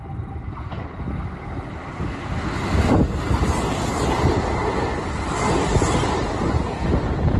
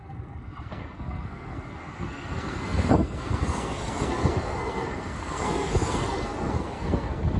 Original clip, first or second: first